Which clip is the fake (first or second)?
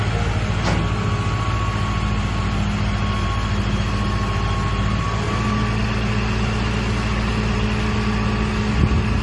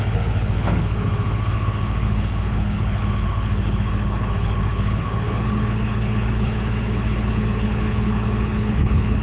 second